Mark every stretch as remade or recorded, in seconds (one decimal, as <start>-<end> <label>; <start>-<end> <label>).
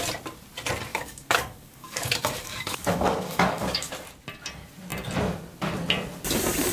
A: 0.0-0.9 recorded; 0.9-3.9 remade; 3.9-6.7 recorded